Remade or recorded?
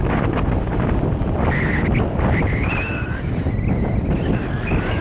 recorded